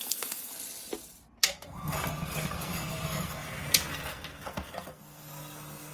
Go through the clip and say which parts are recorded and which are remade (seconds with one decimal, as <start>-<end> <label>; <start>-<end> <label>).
0.0-0.5 remade; 0.5-1.4 recorded; 1.4-5.9 remade